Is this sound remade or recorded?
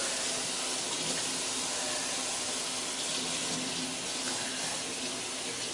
recorded